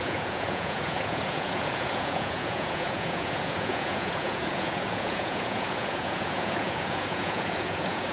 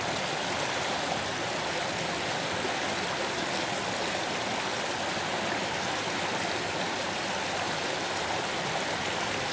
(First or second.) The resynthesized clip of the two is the first